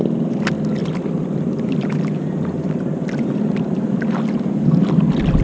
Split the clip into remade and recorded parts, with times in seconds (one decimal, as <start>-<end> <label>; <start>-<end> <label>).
0.0-0.8 recorded; 0.8-4.0 remade; 4.0-5.4 recorded